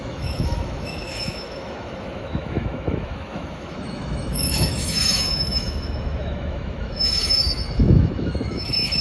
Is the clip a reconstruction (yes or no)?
yes